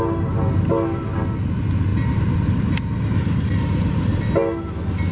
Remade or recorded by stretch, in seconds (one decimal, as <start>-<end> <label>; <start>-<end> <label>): 0.0-1.9 recorded; 1.9-4.2 remade; 4.2-5.1 recorded